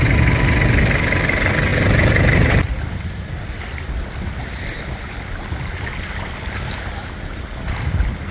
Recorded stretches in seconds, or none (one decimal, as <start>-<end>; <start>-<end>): 0.0-8.3